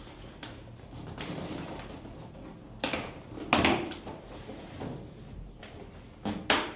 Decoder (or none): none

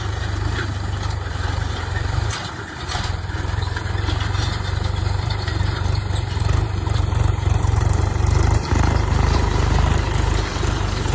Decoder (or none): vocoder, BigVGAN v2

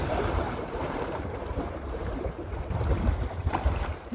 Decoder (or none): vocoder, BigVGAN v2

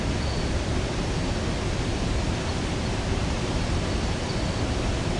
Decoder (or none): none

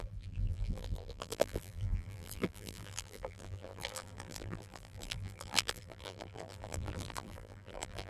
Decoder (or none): vocoder, BigVGAN v2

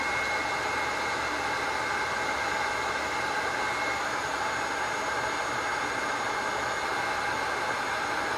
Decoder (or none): none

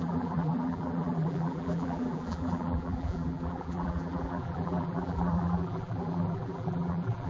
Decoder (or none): vocoder, BigVGAN v2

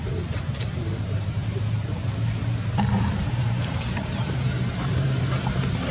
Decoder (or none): vocoder, BigVGAN v2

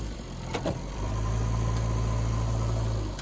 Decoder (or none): vocoder, BigVGAN v2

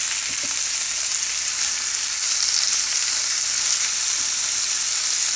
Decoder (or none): none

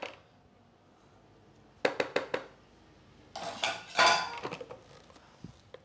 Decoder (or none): none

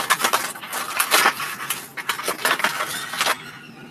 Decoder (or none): none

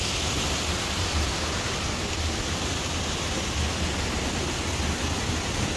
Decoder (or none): none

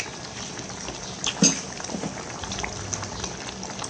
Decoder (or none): none